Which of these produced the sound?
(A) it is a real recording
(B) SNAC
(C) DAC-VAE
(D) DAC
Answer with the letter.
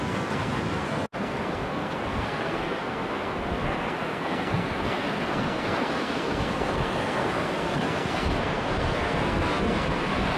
B